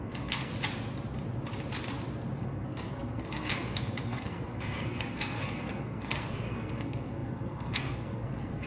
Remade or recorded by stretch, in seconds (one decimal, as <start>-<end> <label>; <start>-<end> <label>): 0.0-0.5 remade; 0.5-2.4 recorded; 2.4-8.7 remade